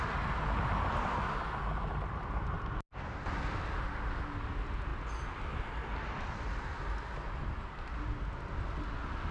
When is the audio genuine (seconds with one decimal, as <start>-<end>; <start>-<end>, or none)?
0.0-9.3